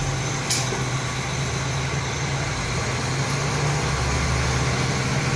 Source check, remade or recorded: recorded